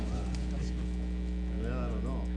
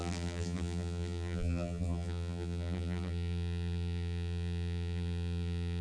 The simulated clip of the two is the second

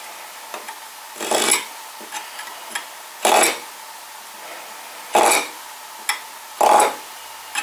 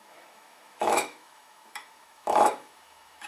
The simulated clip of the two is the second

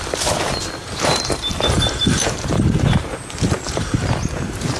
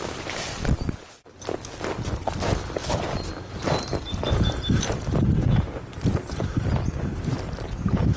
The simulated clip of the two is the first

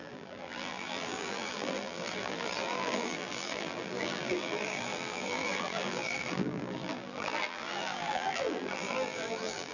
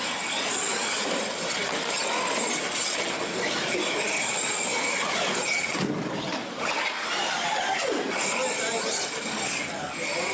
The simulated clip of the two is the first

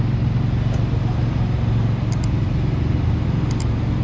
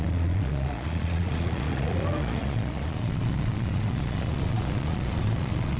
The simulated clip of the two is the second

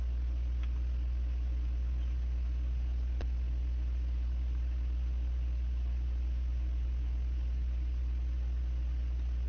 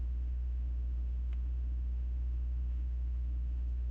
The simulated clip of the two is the second